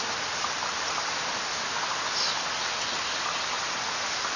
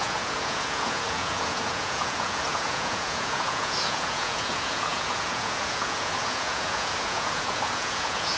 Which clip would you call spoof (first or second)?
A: second